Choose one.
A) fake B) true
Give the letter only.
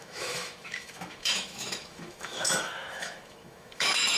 A